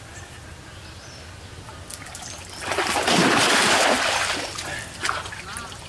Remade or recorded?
recorded